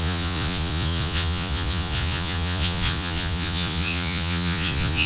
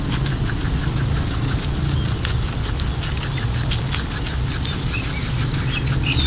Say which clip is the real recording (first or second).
second